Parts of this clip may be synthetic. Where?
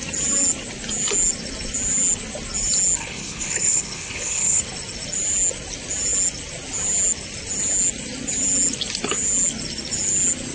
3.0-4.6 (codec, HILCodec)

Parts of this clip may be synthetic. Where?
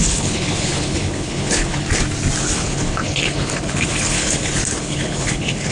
0.0-1.8 (codec, HILCodec); 2.4-5.7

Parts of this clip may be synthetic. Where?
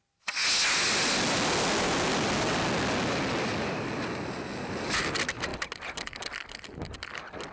none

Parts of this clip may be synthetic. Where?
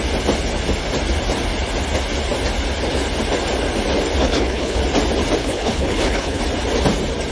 4.2-4.8 (codec, HILCodec); 5.4-6.4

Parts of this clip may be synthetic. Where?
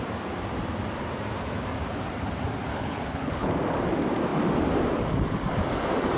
2.7-3.5 (codec, HILCodec)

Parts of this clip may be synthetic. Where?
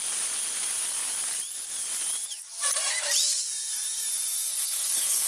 4.5-5.3 (codec, HILCodec)